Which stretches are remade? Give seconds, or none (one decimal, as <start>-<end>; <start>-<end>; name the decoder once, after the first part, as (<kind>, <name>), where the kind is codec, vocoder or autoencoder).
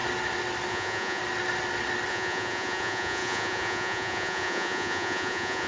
0.7-1.2 (vocoder, Vocos); 2.1-5.7